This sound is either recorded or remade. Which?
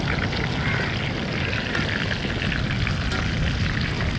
recorded